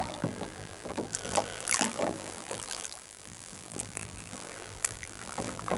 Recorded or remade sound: remade